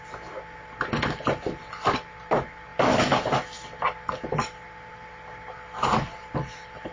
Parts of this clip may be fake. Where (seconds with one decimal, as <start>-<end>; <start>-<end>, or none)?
none